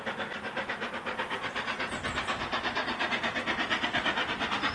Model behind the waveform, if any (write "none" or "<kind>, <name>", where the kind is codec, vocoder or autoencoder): none